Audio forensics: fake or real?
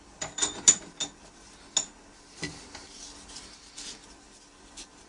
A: real